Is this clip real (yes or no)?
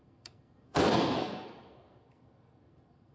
no